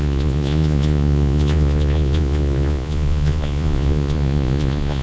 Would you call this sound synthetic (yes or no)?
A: yes